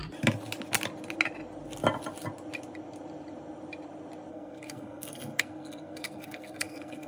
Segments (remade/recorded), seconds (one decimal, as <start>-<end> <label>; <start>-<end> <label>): 0.0-4.3 recorded; 4.3-7.1 remade